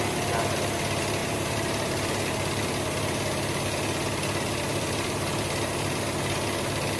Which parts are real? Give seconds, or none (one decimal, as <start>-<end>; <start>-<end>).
0.0-1.2; 2.3-4.7; 5.9-7.0